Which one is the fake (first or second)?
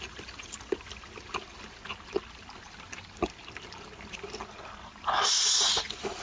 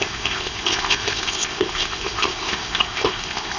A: second